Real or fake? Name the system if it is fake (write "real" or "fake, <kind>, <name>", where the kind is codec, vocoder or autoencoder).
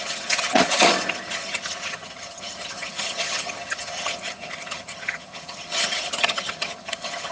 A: fake, vocoder, HiFi-GAN